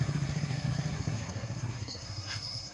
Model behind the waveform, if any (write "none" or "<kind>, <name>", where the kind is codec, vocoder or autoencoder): codec, SNAC